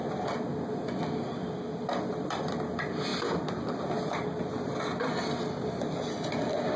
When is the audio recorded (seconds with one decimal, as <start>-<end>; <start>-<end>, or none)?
0.0-3.1; 4.4-6.8